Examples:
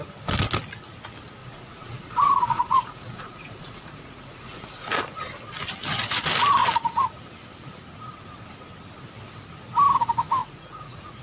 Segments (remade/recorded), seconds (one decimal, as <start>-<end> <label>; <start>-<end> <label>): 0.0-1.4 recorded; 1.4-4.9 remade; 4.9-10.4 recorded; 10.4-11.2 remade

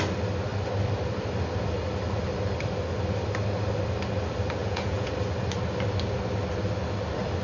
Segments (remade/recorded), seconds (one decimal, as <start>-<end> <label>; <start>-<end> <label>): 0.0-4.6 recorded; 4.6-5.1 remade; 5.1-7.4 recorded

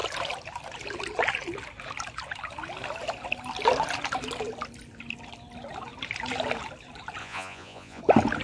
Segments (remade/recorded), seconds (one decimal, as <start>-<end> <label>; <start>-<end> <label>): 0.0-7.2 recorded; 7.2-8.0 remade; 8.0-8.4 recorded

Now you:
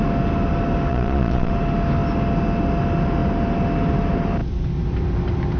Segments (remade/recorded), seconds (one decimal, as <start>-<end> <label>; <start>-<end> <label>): 0.0-0.9 recorded; 0.9-1.5 remade; 1.5-5.6 recorded